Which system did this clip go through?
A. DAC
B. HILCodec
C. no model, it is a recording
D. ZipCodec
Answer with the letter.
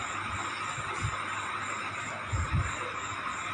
C